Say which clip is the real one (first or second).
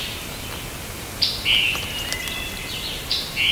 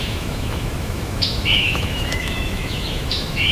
first